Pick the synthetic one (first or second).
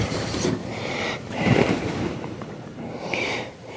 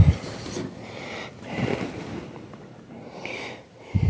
first